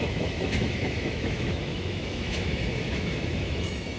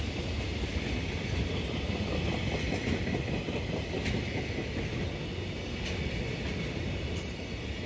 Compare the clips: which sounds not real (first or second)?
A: first